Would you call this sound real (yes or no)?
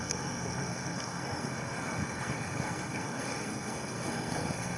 no